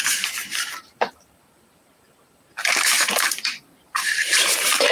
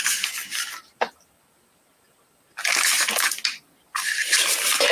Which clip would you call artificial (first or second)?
first